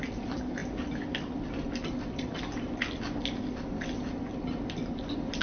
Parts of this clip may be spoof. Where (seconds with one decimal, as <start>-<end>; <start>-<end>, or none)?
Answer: none